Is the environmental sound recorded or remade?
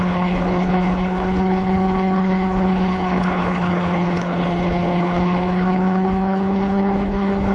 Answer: remade